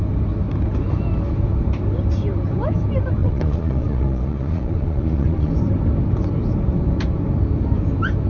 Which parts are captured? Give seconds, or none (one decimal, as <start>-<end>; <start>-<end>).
0.0-3.2; 5.5-8.3